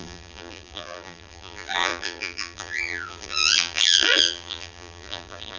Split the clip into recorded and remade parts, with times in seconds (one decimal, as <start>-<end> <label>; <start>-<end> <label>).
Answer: 0.0-5.6 remade